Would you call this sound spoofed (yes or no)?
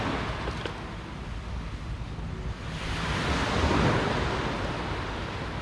no